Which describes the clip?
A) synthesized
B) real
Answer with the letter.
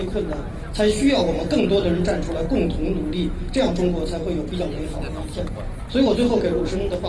B